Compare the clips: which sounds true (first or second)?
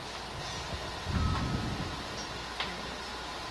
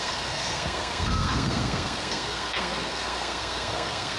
first